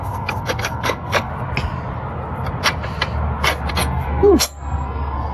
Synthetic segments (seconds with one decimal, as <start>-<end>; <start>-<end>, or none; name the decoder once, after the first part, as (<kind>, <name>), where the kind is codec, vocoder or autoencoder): 0.0-1.3 (codec, SNAC); 3.7-5.3

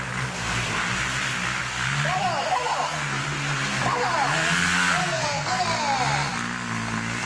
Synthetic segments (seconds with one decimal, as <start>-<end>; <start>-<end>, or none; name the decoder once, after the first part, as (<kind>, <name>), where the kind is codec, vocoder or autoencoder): 5.0-5.6 (codec, SNAC)